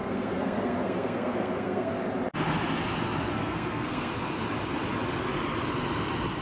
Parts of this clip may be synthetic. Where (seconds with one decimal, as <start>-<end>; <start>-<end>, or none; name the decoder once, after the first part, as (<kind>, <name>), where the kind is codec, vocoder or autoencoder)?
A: 0.0-2.0 (codec, SNAC); 3.3-4.1